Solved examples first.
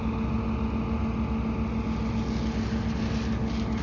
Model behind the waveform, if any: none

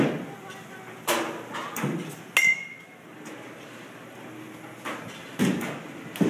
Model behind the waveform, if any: none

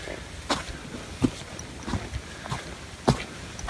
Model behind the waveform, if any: none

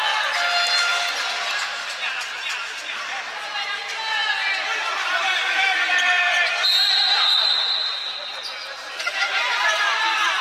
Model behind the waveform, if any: none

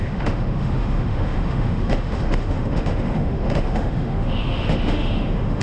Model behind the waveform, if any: autoencoder, DAC-VAE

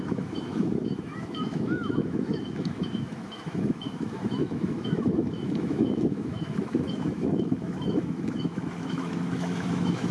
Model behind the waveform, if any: autoencoder, DAC-VAE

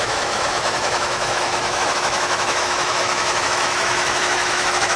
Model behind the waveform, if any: autoencoder, DAC-VAE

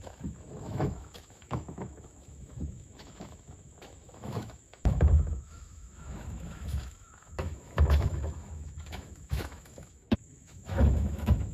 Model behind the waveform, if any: autoencoder, DAC-VAE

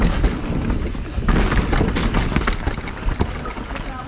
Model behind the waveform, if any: none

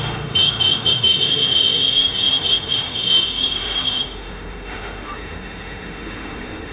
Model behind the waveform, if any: autoencoder, DAC-VAE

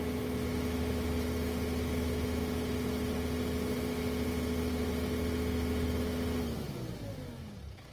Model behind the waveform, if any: none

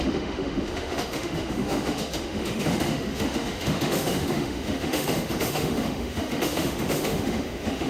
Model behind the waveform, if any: autoencoder, DAC-VAE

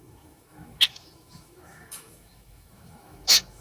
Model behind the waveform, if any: autoencoder, DAC-VAE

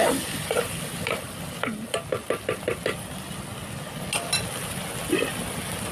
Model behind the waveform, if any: none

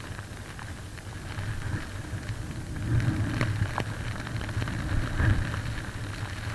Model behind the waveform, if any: none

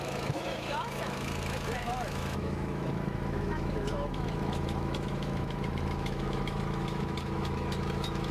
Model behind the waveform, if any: autoencoder, DAC-VAE